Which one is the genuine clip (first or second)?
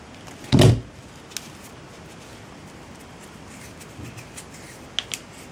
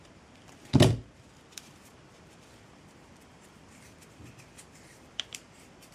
first